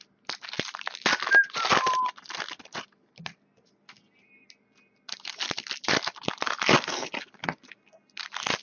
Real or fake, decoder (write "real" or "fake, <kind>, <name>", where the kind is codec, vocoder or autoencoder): real